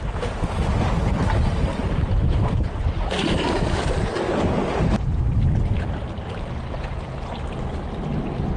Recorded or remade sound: recorded